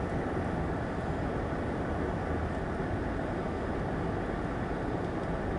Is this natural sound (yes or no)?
yes